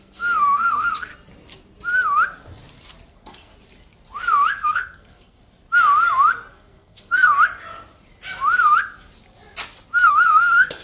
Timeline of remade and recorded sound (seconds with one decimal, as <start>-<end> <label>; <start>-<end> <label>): 0.0-1.1 remade; 1.1-3.1 recorded; 3.1-3.5 remade; 3.5-4.5 recorded; 4.5-5.4 remade; 5.4-6.5 recorded; 6.5-7.3 remade; 7.3-10.0 recorded; 10.0-10.8 remade